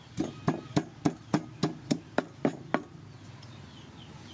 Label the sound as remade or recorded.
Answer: recorded